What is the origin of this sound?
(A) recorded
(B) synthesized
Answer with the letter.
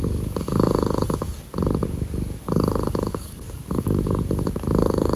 B